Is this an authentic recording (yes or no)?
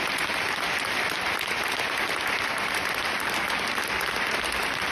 yes